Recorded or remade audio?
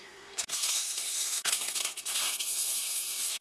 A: remade